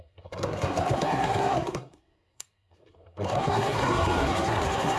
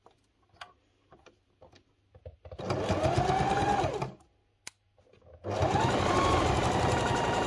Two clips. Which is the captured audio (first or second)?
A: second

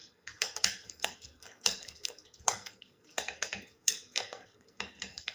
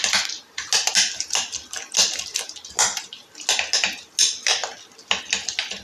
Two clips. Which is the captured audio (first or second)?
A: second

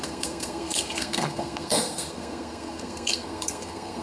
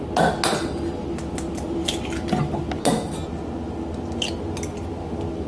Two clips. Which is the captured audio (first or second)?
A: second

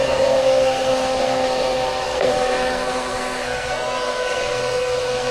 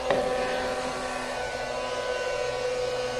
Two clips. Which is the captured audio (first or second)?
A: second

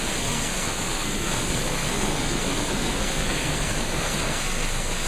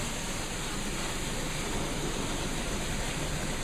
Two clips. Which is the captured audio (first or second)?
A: second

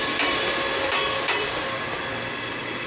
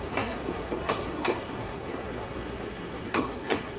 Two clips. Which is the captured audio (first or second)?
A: first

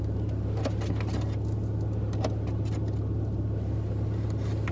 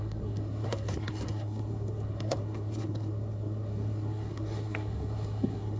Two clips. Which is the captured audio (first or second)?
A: first